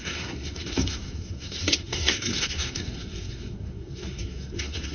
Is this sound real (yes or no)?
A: no